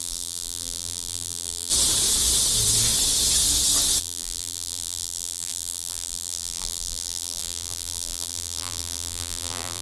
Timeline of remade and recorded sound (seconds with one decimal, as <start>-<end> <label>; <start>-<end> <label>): 0.0-1.7 remade; 1.7-4.0 recorded; 4.0-9.8 remade